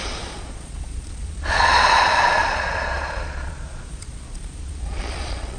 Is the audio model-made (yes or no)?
yes